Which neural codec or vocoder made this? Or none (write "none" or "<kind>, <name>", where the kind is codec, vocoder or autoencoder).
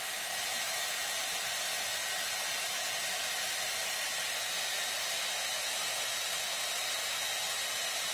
none